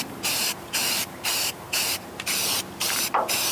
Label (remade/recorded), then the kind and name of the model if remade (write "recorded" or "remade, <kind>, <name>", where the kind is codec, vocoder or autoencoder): remade, vocoder, BigVGAN v2